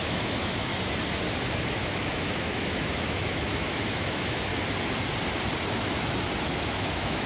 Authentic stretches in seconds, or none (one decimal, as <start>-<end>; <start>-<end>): 0.7-1.6; 4.5-6.4